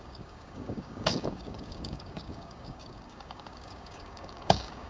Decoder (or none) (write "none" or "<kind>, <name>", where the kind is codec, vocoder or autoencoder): codec, DAC